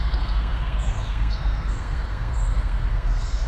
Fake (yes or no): yes